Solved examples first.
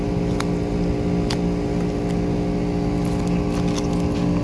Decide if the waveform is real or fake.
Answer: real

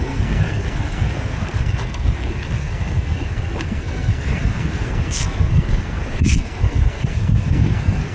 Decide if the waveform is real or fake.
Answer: fake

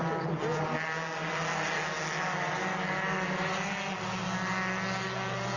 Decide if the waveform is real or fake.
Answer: real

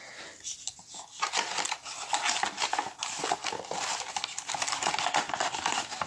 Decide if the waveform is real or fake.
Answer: real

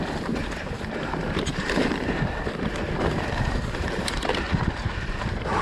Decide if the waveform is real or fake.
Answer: fake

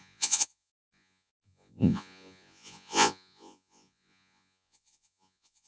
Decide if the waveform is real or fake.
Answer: fake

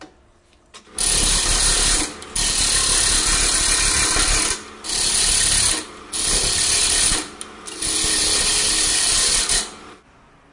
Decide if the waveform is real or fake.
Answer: real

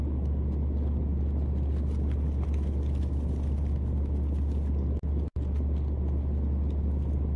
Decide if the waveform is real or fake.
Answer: real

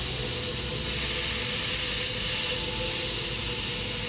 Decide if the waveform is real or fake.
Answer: real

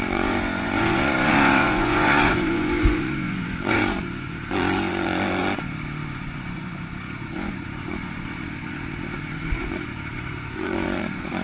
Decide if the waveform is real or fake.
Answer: fake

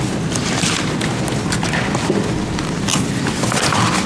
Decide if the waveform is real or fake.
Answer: real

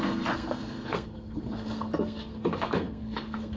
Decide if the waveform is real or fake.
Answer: fake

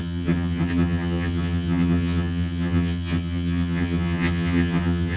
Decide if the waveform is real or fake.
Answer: fake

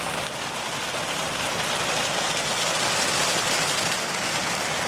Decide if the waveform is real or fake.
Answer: real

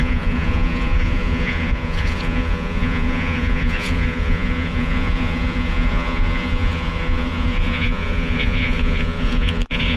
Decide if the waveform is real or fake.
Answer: fake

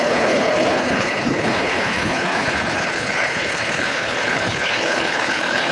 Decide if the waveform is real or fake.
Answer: fake